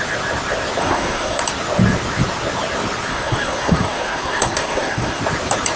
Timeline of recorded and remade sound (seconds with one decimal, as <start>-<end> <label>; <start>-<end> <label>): 0.0-0.8 recorded; 0.8-1.4 remade; 1.4-3.1 recorded; 3.1-5.2 remade; 5.2-5.8 recorded